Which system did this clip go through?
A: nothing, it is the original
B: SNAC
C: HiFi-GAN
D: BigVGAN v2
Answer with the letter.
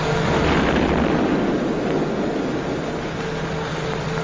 A